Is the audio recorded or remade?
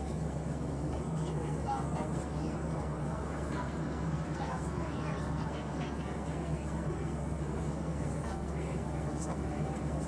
remade